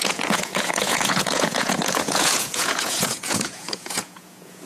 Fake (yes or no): yes